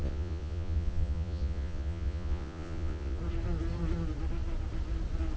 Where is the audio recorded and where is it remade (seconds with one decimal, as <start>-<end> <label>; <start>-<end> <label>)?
0.0-3.2 remade; 3.2-5.4 recorded